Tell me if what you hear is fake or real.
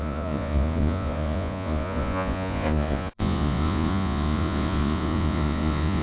fake